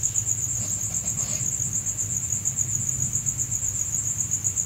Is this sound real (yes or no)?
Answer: yes